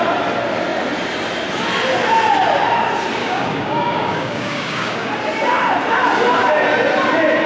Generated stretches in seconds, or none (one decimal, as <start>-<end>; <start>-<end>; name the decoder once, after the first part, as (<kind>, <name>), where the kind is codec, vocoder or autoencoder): 3.2-5.1 (codec, DAC)